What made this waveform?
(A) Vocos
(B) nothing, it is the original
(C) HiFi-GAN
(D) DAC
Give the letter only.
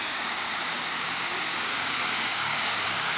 D